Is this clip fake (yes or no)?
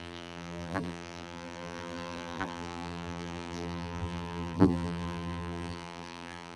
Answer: yes